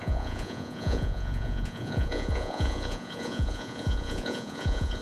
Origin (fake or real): fake